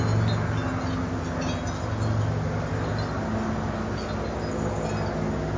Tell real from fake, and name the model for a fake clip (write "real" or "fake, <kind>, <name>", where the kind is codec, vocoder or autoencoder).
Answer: real